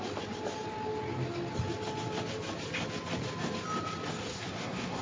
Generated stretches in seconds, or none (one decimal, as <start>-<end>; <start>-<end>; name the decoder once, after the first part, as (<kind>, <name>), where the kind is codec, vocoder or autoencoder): 4.3-5.0 (codec, SNAC)